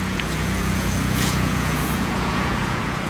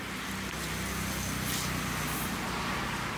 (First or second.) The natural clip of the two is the second